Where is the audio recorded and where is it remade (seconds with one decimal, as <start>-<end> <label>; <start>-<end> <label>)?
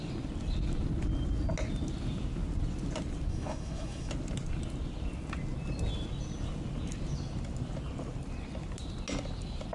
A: 0.0-3.3 recorded; 3.3-4.1 remade; 4.1-9.7 recorded